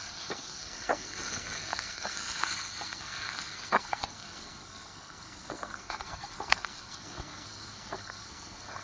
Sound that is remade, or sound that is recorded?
remade